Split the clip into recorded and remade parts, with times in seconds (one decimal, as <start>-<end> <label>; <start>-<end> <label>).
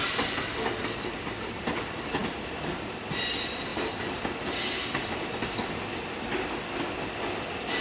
0.0-7.8 recorded